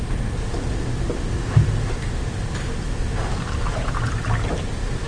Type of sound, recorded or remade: recorded